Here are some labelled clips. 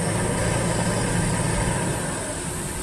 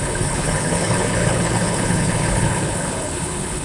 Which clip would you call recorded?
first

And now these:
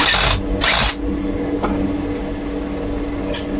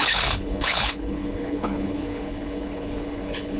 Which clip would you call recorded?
first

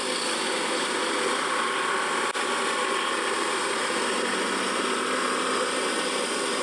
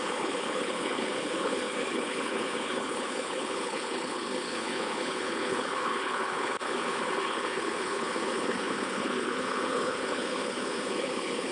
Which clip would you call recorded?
first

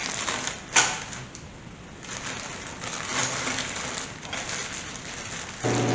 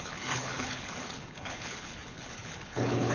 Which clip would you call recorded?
first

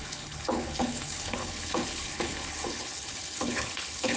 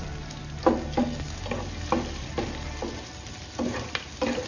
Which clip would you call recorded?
second